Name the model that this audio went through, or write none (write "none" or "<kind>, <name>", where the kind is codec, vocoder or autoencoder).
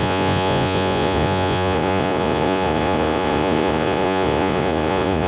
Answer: vocoder, Vocos